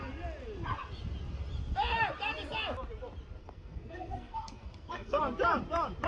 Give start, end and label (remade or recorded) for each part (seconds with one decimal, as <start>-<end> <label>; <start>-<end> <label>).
0.0-3.4 recorded; 3.4-5.2 remade; 5.2-6.1 recorded